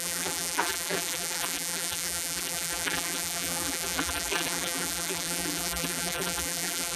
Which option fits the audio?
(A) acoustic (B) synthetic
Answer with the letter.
B